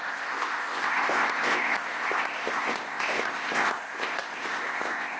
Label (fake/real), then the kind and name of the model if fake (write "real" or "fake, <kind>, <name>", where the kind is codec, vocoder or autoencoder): fake, codec, ZipCodec